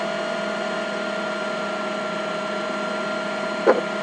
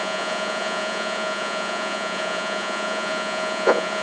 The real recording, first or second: first